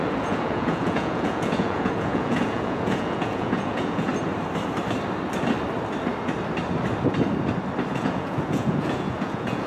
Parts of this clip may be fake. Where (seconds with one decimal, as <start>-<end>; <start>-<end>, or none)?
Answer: 0.0-4.1; 7.9-9.7

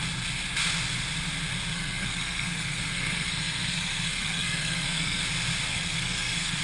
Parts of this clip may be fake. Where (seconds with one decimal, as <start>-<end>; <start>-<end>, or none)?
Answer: 1.7-5.2; 5.7-6.6

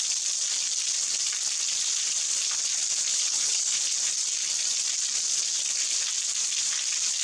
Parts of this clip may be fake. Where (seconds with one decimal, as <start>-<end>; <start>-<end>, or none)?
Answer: 3.1-3.8

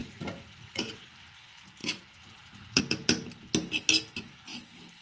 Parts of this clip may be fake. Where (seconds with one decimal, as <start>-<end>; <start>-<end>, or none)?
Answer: 0.0-1.0; 1.8-2.8